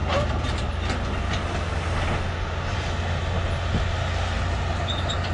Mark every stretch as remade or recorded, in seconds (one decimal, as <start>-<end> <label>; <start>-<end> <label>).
0.0-5.3 recorded